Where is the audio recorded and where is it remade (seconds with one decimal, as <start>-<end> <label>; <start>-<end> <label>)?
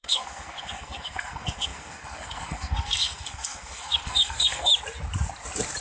0.0-4.7 remade; 4.7-5.8 recorded